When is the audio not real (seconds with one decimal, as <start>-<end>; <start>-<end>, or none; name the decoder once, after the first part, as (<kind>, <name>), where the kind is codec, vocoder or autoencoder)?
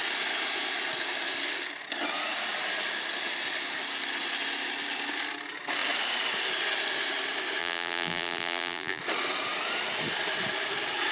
7.6-9.0 (vocoder, BigVGAN v2)